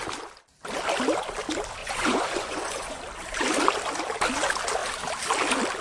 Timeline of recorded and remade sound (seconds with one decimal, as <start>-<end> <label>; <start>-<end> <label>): 0.0-1.8 recorded; 1.8-3.0 remade; 3.0-5.8 recorded